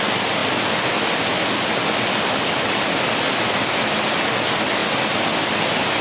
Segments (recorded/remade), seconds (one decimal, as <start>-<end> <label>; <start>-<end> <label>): 0.0-4.8 recorded; 4.8-5.6 remade; 5.6-6.0 recorded